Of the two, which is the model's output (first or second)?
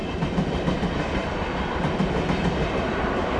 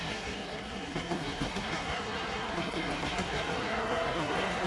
second